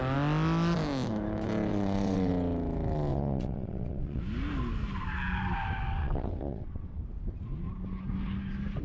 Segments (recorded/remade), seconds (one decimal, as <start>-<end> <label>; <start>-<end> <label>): 0.0-1.7 recorded; 1.7-2.3 remade; 2.3-3.1 recorded; 3.1-4.2 remade; 4.2-6.0 recorded; 6.0-7.0 remade; 7.0-8.8 recorded